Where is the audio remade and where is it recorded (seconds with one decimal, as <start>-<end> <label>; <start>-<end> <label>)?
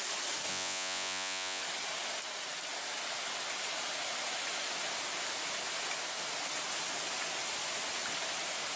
0.0-0.5 recorded; 0.5-1.6 remade; 1.6-8.8 recorded